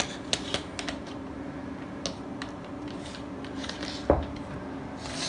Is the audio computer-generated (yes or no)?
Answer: no